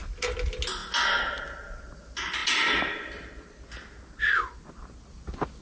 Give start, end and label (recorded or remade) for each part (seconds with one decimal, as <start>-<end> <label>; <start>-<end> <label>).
0.0-5.6 recorded